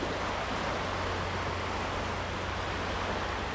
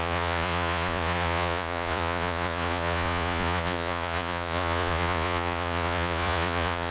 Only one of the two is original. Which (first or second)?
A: first